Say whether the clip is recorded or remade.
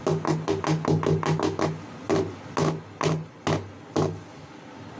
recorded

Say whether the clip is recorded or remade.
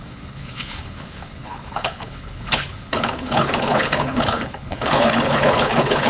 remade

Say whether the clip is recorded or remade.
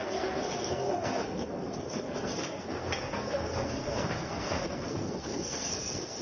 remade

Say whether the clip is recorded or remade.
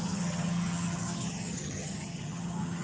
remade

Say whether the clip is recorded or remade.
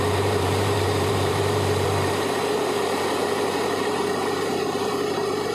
remade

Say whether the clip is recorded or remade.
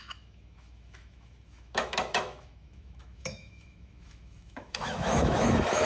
remade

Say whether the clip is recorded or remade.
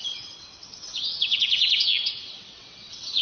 remade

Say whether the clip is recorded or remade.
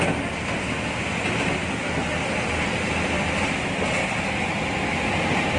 recorded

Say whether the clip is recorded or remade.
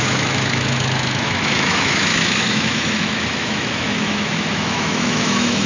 remade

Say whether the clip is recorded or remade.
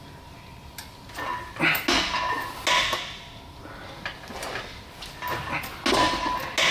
recorded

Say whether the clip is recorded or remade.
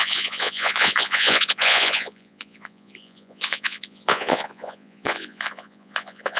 remade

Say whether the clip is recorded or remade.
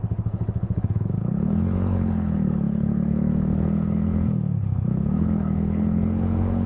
remade